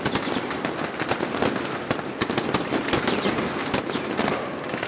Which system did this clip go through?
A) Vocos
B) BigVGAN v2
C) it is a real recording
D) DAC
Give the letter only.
C